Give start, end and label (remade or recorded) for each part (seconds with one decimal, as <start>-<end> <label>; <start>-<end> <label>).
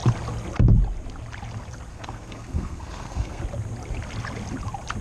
0.0-1.9 recorded; 1.9-3.4 remade; 3.4-5.0 recorded